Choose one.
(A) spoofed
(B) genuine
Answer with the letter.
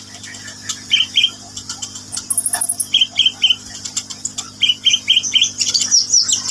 B